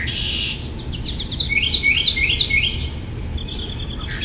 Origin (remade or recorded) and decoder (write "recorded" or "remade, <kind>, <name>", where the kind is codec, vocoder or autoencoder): recorded